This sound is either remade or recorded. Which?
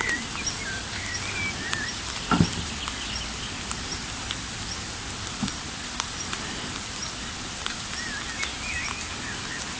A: recorded